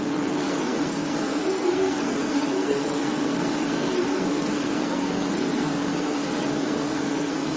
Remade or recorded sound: remade